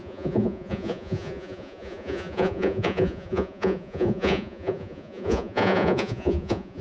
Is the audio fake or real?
fake